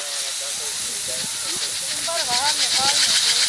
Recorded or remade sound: recorded